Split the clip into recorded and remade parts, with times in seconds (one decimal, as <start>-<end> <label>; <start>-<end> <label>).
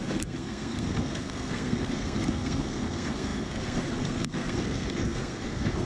0.0-5.9 remade